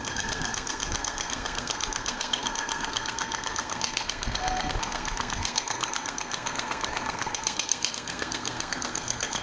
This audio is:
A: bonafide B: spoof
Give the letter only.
B